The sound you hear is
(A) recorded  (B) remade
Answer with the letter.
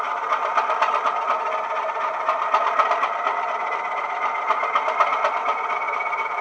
A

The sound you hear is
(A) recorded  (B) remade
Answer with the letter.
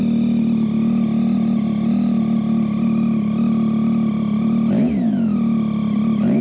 A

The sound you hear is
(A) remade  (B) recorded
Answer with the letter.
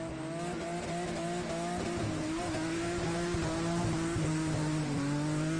B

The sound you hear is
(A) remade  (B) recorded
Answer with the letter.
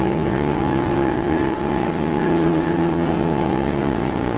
A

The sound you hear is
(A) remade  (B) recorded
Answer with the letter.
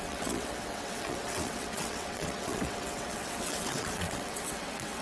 A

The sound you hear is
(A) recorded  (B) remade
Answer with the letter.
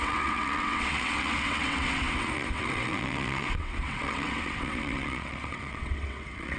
B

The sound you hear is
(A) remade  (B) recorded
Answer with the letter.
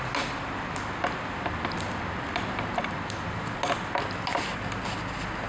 B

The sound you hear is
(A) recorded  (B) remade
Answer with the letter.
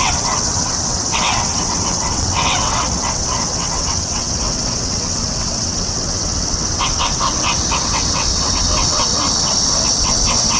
B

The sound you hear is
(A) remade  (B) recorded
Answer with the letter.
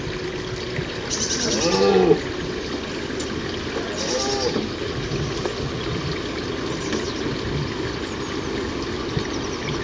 B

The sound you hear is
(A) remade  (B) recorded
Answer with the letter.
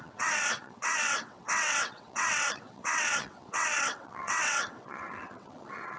A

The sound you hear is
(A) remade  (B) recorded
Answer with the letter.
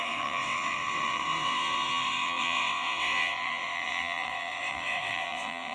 A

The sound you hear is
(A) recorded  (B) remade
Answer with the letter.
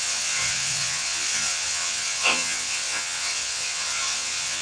B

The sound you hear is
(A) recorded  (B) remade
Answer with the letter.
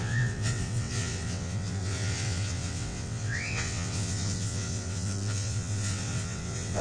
B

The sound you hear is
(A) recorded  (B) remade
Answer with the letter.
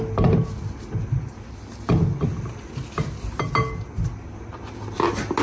A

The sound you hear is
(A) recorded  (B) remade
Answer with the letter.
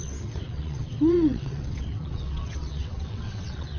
B